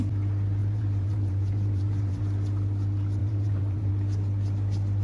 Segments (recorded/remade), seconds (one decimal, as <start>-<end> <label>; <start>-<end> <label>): 0.0-0.6 recorded; 0.6-2.2 remade; 2.2-3.2 recorded; 3.2-3.9 remade; 3.9-5.0 recorded